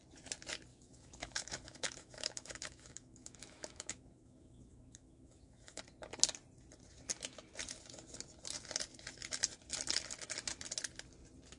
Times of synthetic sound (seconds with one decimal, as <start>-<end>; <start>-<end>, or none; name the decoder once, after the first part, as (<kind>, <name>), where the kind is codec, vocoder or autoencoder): 0.7-5.8 (autoencoder, DAC-VAE)